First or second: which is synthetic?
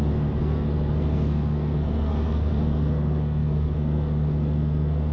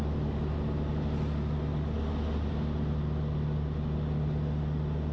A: first